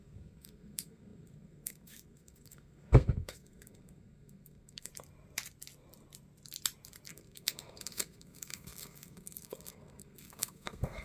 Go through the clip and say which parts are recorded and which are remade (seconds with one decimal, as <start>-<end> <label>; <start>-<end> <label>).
0.0-4.9 remade; 4.9-7.1 recorded; 7.1-11.0 remade